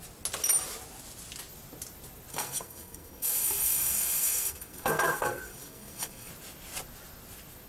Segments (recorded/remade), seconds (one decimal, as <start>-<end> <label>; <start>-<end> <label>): 0.0-2.3 recorded; 2.3-6.3 remade; 6.3-7.7 recorded